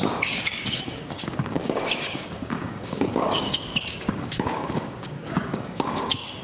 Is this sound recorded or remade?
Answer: remade